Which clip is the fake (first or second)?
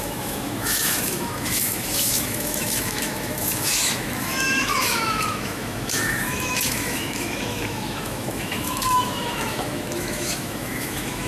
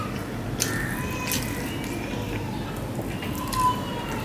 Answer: first